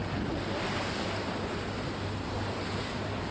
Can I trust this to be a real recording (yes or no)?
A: yes